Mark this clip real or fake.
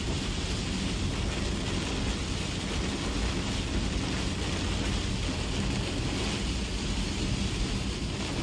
real